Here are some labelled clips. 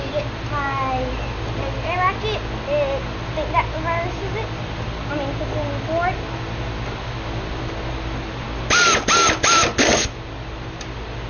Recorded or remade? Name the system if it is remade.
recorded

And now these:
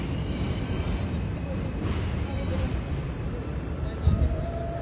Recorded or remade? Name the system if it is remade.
recorded